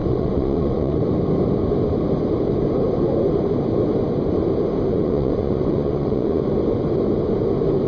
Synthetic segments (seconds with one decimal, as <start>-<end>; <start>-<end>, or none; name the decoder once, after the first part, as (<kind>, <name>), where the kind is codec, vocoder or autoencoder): 0.0-1.1 (vocoder, Vocos); 4.9-6.4